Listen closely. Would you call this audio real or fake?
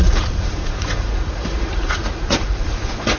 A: fake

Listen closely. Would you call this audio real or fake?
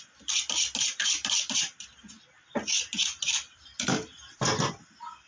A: real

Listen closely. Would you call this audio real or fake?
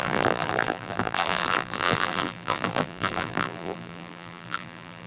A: fake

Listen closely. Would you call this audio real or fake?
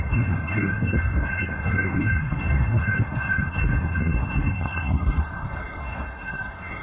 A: fake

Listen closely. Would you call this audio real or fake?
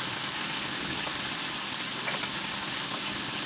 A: real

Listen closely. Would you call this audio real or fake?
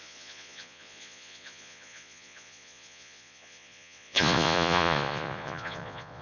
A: fake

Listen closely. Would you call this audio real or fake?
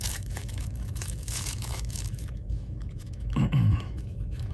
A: fake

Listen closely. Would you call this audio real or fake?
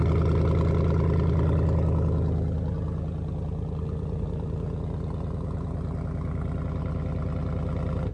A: real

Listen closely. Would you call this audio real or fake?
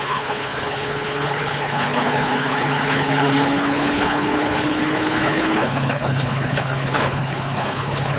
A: fake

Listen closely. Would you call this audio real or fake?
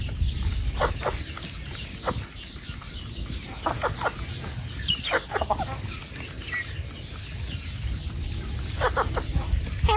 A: real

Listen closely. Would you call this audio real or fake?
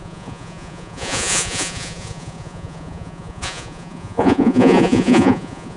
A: fake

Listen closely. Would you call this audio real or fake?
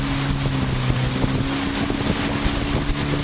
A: real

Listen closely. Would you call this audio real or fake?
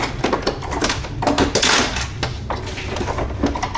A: real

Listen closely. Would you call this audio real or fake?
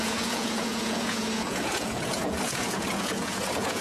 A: fake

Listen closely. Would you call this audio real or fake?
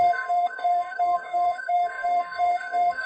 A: fake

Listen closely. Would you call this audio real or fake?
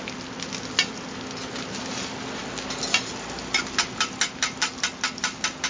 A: real